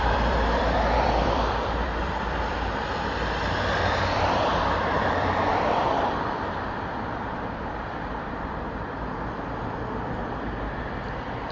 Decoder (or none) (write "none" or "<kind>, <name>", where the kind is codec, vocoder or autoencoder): vocoder, BigVGAN v2